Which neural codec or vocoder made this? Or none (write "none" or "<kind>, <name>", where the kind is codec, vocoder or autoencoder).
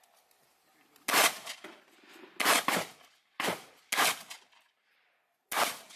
none